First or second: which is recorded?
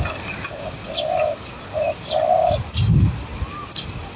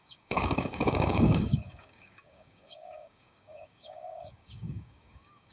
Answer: first